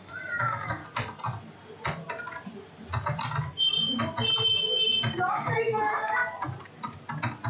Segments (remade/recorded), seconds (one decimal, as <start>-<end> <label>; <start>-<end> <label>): 0.0-0.8 remade; 0.8-5.3 recorded; 5.3-6.2 remade; 6.2-7.5 recorded

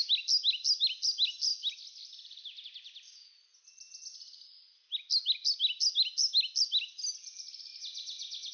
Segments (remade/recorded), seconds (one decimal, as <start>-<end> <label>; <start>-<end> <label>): 0.0-8.5 recorded

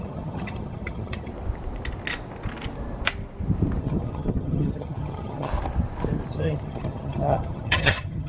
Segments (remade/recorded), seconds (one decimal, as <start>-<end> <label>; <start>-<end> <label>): 0.0-1.3 remade; 1.3-3.8 recorded; 3.8-5.5 remade; 5.5-6.3 recorded; 6.3-8.3 remade

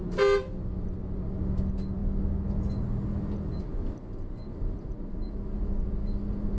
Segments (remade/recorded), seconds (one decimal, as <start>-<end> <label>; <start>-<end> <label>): 0.0-6.6 recorded

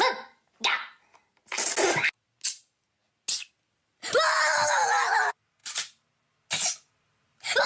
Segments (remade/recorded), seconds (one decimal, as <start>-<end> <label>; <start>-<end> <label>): 0.0-7.7 recorded

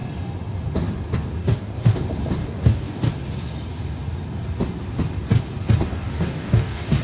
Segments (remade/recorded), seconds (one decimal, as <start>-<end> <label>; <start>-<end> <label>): 0.0-1.4 recorded; 1.4-2.0 remade; 2.0-2.4 recorded; 2.4-3.1 remade; 3.1-5.9 recorded; 5.9-7.0 remade

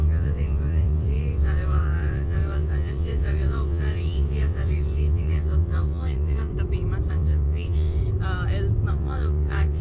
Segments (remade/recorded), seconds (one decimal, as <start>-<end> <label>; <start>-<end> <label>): 0.0-6.5 remade; 6.5-7.1 recorded; 7.1-8.0 remade; 8.0-8.9 recorded; 8.9-9.8 remade